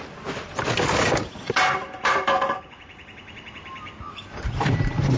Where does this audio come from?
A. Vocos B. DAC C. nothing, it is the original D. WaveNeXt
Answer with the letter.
C